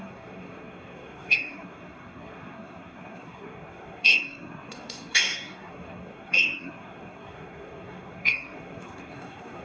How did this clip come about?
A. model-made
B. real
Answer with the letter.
A